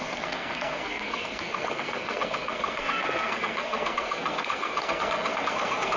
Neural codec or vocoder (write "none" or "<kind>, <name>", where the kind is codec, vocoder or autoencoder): codec, SNAC